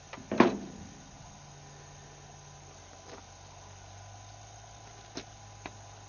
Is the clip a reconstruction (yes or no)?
no